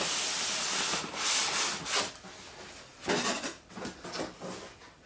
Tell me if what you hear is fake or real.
real